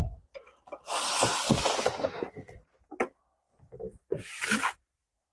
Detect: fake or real real